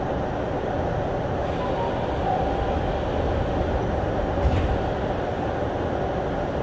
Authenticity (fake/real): real